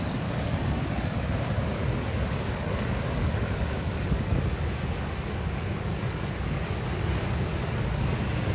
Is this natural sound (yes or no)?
no